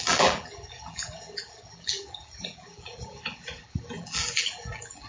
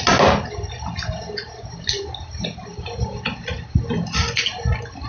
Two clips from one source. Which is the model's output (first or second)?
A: first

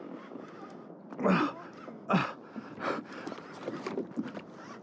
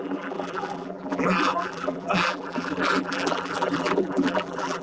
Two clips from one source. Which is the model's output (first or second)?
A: second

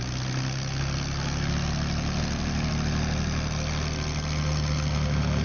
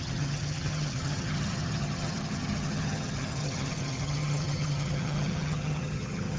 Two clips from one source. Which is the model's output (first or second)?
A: second